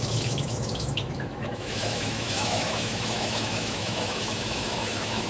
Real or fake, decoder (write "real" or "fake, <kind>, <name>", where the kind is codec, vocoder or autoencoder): fake, autoencoder, DAC-VAE